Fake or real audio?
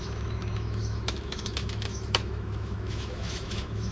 fake